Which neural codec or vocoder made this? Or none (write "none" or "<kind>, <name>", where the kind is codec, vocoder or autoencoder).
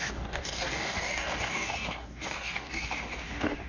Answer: codec, DAC